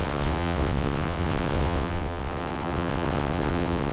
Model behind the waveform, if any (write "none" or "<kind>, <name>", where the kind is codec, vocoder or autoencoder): vocoder, WaveNeXt